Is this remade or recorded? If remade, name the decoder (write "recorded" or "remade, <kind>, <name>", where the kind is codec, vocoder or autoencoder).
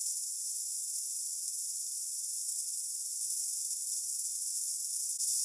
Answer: recorded